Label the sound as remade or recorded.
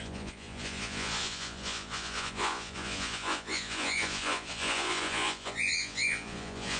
remade